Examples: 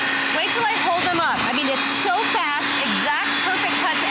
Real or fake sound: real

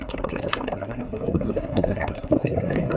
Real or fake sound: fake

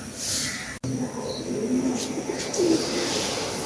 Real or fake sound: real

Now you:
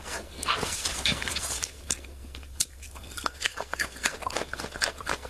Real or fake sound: fake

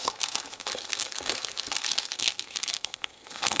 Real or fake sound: fake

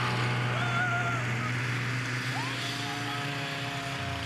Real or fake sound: real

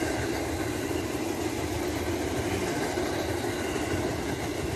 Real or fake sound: real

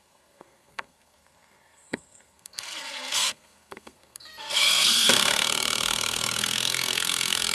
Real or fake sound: fake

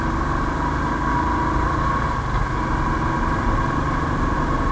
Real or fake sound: real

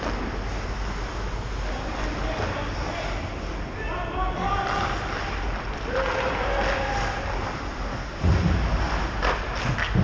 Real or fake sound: real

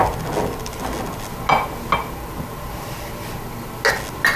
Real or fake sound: real